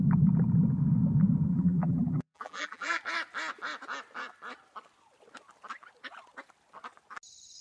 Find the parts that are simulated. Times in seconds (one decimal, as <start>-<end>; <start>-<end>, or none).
1.5-3.0